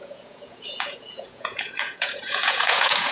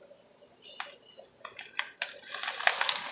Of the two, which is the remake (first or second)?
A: first